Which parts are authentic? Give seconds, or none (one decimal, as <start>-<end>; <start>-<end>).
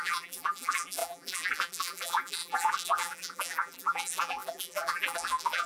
none